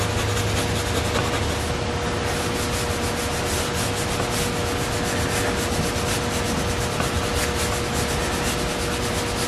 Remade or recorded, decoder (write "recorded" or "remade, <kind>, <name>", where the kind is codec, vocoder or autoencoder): recorded